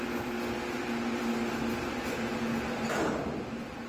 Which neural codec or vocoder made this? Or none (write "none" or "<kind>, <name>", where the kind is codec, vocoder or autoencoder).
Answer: none